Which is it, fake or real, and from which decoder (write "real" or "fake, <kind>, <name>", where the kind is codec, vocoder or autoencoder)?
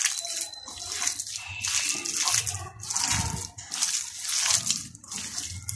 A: real